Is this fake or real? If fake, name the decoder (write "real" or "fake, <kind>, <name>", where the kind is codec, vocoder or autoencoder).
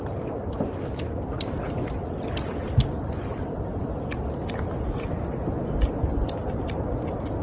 real